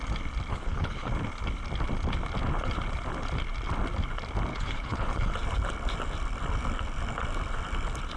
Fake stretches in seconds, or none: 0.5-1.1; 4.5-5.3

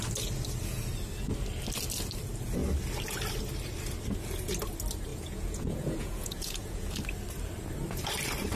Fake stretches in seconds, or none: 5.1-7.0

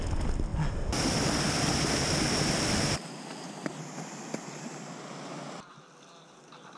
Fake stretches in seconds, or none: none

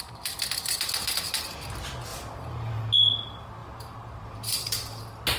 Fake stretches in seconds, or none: 2.1-2.8; 3.6-4.7